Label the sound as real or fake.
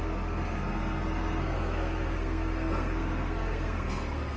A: fake